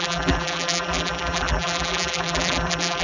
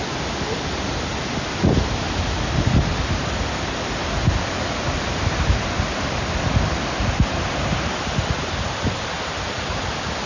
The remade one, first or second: first